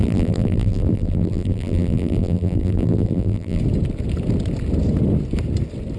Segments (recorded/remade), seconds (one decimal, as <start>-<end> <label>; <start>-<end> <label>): 0.0-3.6 remade; 3.6-6.0 recorded